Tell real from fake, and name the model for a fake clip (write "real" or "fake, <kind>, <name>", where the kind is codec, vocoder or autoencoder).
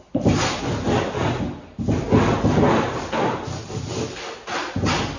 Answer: real